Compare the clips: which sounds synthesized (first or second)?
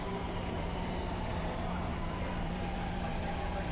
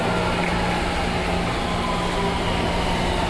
first